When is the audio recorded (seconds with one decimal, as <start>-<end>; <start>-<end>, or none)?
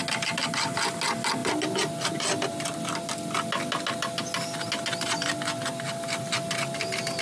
0.0-7.2